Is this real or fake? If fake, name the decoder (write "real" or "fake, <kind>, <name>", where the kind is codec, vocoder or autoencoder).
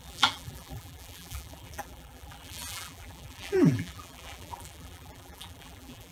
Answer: fake, vocoder, BigVGAN v2